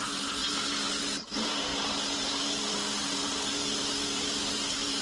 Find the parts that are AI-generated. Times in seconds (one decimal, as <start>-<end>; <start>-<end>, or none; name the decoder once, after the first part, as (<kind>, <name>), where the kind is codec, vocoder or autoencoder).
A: none